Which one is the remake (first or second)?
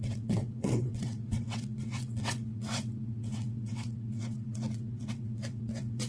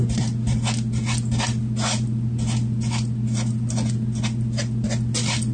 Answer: first